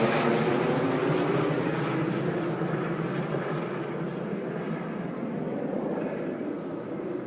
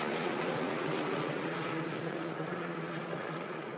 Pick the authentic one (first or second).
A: first